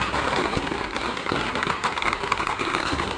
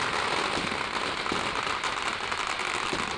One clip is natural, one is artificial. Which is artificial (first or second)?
first